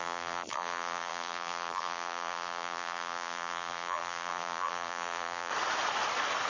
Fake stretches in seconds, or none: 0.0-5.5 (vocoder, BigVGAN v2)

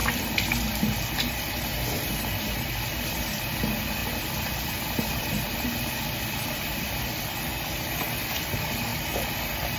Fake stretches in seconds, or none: 2.4-7.5 (vocoder, BigVGAN v2); 8.4-8.9